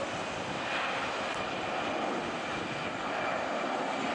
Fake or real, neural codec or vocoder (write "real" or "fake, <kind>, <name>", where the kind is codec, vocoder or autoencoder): real